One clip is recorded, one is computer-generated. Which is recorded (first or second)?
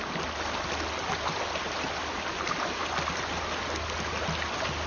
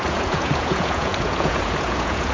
first